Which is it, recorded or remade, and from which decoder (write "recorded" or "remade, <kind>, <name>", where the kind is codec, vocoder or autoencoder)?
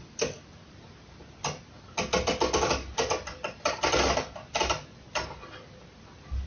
recorded